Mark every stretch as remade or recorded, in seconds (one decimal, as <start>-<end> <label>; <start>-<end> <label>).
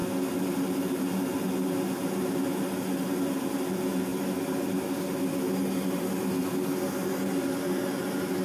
0.0-8.4 recorded